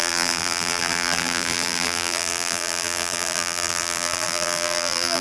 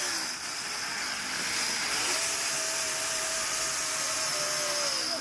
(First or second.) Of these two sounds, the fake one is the first